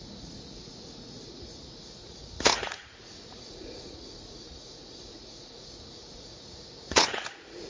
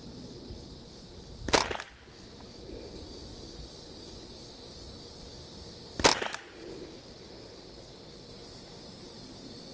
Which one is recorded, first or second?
second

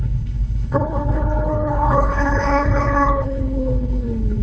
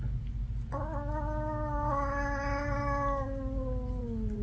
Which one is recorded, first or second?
second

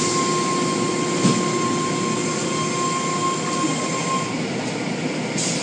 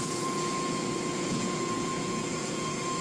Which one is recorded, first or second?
first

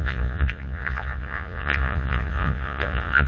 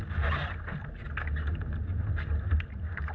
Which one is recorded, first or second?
second